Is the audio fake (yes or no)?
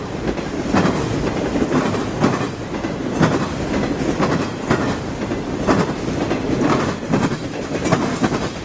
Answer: no